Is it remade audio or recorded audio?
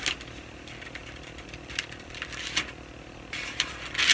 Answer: recorded